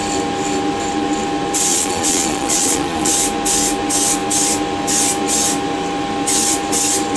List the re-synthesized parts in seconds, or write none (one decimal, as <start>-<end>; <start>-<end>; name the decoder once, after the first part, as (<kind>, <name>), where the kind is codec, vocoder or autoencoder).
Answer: 1.7-3.1 (vocoder, Vocos)